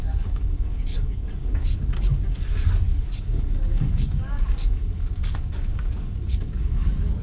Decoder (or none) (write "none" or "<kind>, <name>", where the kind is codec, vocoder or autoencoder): codec, DAC